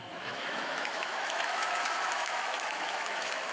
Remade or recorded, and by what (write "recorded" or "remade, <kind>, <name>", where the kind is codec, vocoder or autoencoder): remade, autoencoder, DAC-VAE